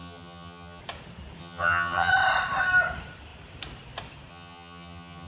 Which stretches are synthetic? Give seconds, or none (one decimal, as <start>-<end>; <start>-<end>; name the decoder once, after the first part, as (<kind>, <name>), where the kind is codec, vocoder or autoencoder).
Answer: 0.0-0.8 (vocoder, HiFi-GAN); 1.4-2.1; 4.3-5.3